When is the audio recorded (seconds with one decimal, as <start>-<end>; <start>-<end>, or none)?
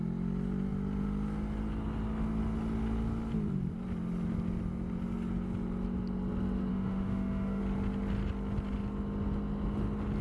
0.0-6.7; 7.6-10.2